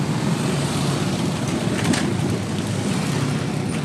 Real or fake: real